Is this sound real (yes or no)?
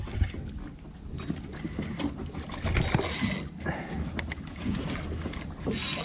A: yes